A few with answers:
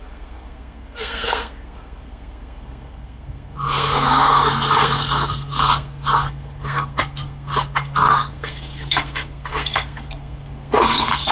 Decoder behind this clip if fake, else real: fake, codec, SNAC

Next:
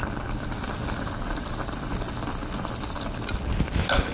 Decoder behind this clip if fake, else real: real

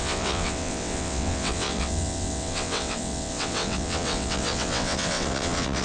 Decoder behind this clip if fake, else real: fake, vocoder, WaveNeXt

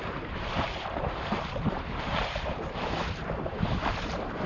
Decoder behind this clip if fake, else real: fake, vocoder, BigVGAN v2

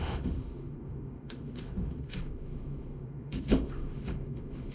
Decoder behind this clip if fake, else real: fake, autoencoder, DAC-VAE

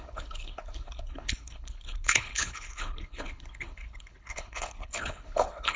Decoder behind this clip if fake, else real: fake, codec, HILCodec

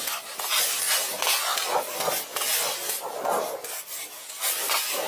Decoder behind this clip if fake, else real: real